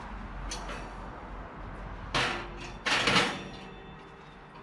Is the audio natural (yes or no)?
yes